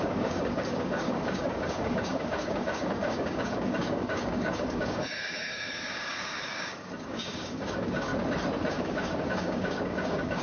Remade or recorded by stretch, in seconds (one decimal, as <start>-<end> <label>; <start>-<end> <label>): 0.0-8.1 remade; 8.1-8.7 recorded; 8.7-10.4 remade